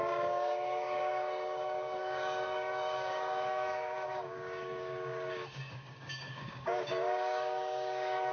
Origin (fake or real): fake